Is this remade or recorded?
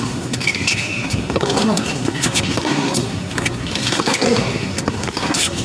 remade